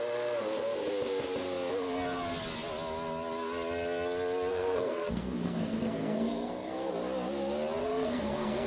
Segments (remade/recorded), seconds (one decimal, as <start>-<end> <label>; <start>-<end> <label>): 0.0-4.5 recorded; 4.5-6.9 remade; 6.9-7.8 recorded; 7.8-8.7 remade